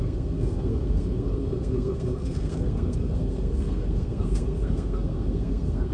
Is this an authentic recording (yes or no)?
no